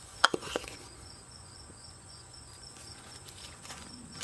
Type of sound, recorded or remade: remade